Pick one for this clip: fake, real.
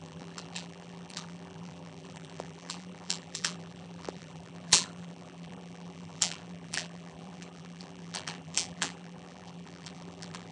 fake